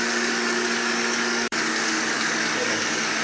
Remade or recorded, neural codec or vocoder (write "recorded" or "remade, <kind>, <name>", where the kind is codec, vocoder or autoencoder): remade, codec, DAC